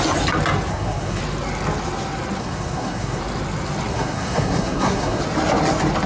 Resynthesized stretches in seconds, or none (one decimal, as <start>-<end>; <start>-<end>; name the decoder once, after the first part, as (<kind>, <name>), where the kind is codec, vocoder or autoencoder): 0.7-1.2 (codec, SNAC); 2.4-3.2; 3.9-5.2